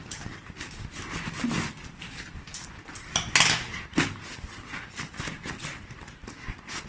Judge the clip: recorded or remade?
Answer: recorded